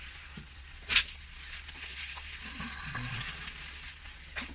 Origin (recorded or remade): remade